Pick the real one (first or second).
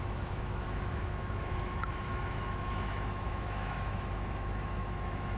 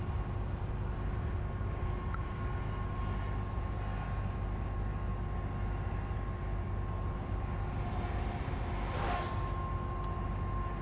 second